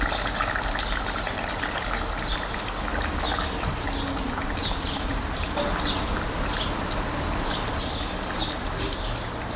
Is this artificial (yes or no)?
no